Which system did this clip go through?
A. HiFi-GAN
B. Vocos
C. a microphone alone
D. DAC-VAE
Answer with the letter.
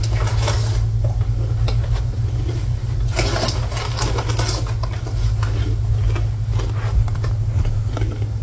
C